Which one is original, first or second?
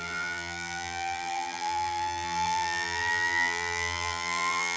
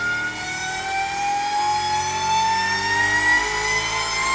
second